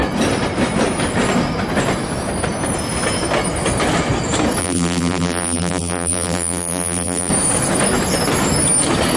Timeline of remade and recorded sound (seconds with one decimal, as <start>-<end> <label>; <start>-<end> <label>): 0.0-4.6 recorded; 4.6-7.3 remade; 7.3-9.2 recorded